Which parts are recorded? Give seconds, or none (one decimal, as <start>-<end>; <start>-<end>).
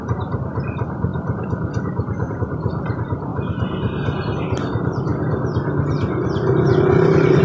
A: 3.3-4.2; 5.1-6.8